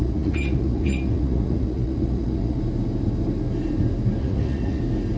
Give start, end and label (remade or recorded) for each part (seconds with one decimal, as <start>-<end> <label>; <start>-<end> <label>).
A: 0.0-2.6 remade; 2.6-4.2 recorded; 4.2-4.8 remade; 4.8-5.2 recorded